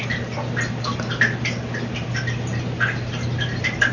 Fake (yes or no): no